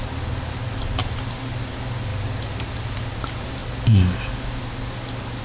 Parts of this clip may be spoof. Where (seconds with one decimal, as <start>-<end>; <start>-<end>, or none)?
none